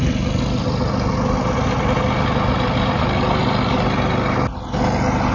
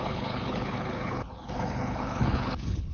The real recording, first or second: first